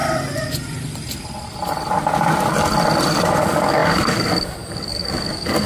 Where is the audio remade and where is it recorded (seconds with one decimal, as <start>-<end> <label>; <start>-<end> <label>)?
0.0-3.4 recorded; 3.4-5.7 remade